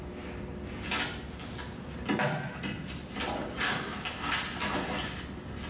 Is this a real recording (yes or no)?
yes